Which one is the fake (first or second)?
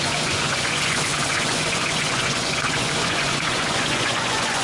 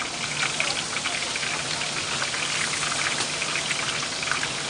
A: first